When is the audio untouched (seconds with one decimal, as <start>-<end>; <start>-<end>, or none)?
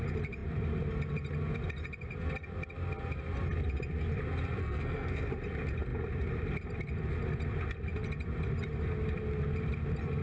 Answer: 0.0-4.6; 5.3-10.2